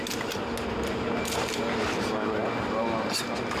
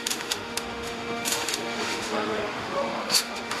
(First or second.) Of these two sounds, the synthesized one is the second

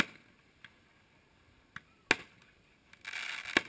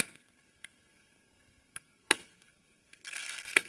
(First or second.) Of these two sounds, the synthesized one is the second